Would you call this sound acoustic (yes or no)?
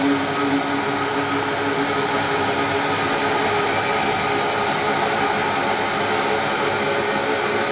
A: yes